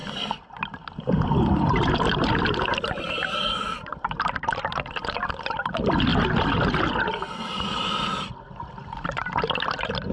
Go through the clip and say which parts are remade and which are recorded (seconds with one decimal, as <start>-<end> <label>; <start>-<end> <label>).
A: 0.0-10.1 recorded